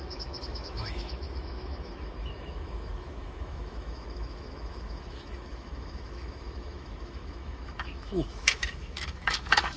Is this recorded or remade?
remade